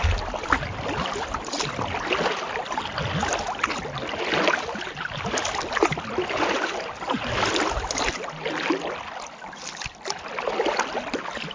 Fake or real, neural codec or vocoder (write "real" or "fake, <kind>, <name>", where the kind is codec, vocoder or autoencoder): real